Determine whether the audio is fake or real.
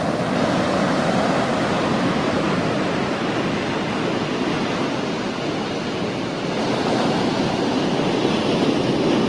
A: real